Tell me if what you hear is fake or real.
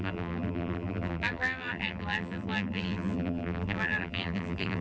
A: fake